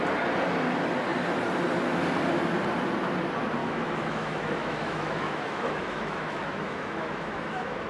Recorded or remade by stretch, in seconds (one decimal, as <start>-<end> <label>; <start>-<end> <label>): 0.0-3.6 recorded; 3.6-7.9 remade